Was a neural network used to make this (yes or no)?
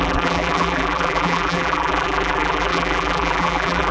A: yes